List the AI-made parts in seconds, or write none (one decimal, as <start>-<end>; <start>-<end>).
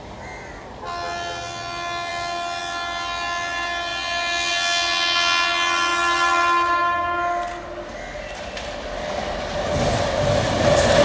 none